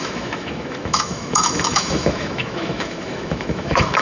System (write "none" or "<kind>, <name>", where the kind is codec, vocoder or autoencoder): autoencoder, DAC-VAE